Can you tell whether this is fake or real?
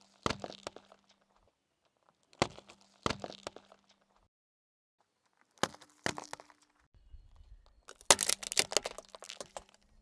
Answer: real